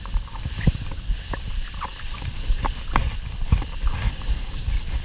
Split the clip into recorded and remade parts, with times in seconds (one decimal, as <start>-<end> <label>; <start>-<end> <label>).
0.0-5.0 recorded